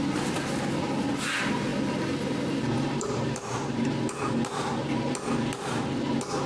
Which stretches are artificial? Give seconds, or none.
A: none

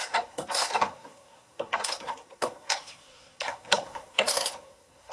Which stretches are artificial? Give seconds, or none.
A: 0.0-5.1 (codec, SNAC)

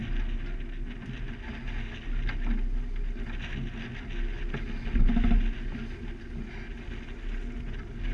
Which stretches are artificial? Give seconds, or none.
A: none